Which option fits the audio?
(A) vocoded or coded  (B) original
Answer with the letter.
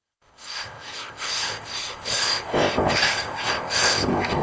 A